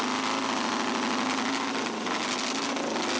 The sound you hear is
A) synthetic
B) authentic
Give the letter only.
B